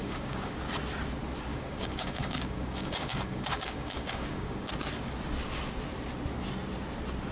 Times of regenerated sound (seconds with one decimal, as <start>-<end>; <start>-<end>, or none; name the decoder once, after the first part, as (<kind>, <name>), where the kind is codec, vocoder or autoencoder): 0.0-0.5 (codec, DAC); 1.5-4.7